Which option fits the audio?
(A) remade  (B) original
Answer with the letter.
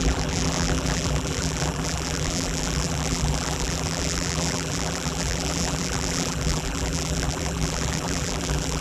A